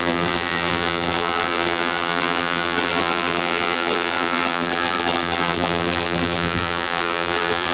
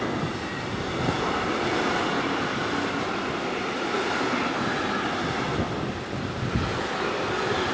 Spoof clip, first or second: first